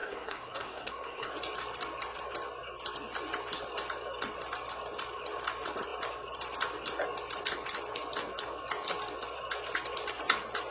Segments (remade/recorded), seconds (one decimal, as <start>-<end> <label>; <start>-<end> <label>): 0.0-1.3 remade; 1.3-10.7 recorded

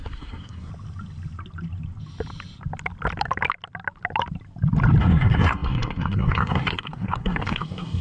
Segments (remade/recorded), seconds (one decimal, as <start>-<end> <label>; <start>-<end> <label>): 0.0-0.7 remade; 0.7-5.0 recorded; 5.0-8.0 remade